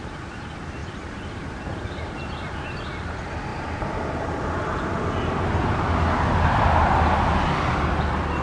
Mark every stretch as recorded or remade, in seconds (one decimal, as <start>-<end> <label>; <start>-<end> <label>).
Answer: 0.0-8.4 recorded